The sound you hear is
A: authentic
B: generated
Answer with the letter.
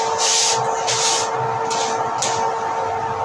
A